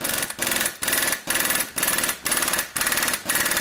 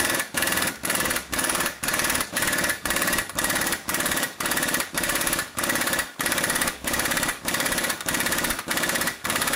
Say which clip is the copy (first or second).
second